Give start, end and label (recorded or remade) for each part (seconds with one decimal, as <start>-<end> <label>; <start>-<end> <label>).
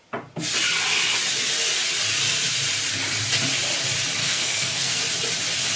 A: 0.0-4.2 recorded; 4.2-5.0 remade; 5.0-5.8 recorded